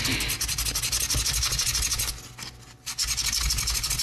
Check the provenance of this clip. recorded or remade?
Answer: recorded